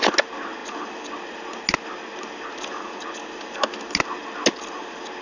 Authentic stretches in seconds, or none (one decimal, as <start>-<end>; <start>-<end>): 0.0-5.2

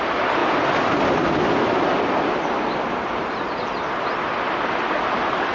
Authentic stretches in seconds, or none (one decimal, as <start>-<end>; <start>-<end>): 0.0-5.5